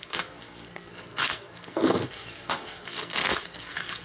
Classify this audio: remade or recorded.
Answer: remade